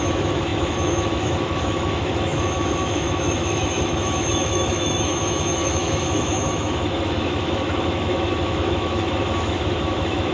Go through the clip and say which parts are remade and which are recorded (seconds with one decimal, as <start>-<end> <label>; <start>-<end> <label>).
0.0-10.3 remade